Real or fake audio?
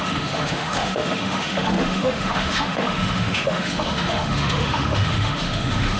fake